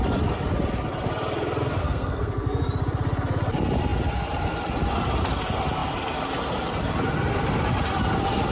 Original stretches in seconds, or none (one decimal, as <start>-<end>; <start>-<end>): 0.0-1.8; 2.3-8.5